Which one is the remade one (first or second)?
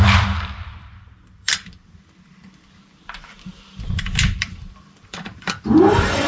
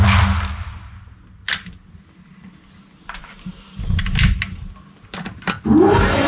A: first